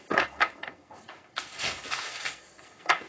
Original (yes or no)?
no